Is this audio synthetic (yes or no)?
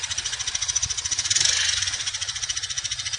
yes